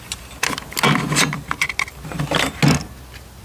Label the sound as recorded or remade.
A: recorded